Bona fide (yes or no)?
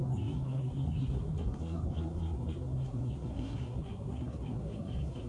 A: no